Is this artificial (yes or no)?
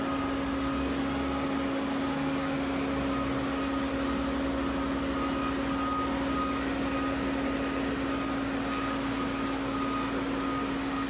no